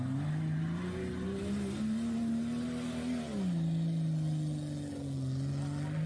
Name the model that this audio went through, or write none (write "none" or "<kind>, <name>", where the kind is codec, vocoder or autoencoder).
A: none